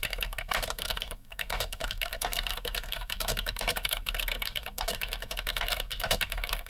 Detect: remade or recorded remade